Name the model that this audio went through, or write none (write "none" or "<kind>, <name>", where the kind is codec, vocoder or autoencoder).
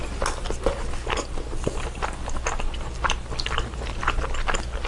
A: none